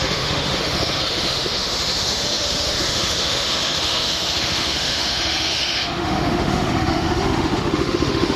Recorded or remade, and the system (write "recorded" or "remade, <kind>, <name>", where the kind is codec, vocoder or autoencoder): remade, autoencoder, DAC-VAE